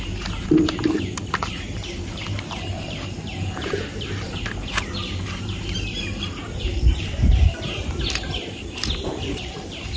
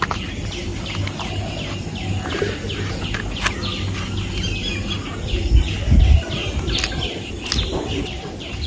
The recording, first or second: second